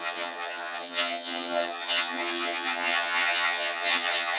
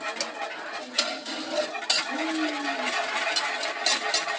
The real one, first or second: second